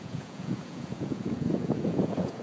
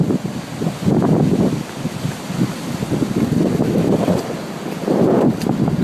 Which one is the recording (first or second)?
second